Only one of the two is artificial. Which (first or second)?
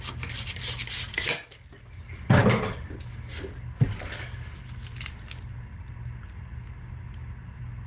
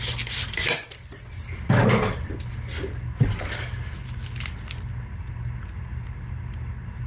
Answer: first